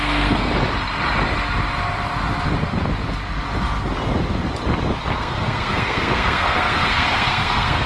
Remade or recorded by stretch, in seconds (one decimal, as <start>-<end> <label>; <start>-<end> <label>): 0.0-0.5 remade; 0.5-5.2 recorded; 5.2-7.9 remade

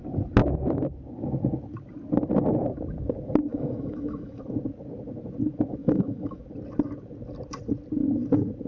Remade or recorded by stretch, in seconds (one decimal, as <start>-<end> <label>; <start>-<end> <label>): 0.0-3.5 recorded; 3.5-4.4 remade; 4.4-5.8 recorded; 5.8-6.4 remade; 6.4-8.7 recorded